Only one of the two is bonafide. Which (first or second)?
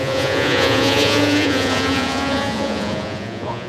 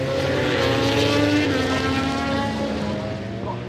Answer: second